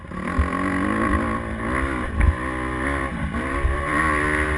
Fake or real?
real